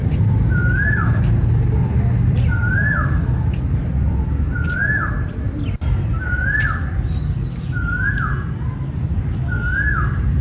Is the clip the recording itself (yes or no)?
yes